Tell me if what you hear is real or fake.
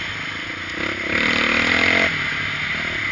real